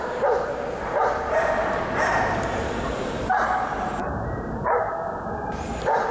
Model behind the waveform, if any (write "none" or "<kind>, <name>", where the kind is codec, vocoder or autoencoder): vocoder, BigVGAN v2